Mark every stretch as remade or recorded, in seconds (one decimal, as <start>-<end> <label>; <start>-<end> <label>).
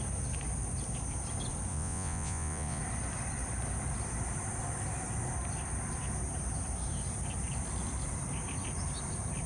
0.0-1.7 recorded; 1.7-2.8 remade; 2.8-9.5 recorded